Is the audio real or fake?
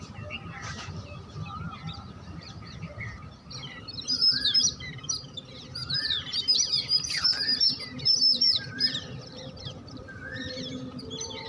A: fake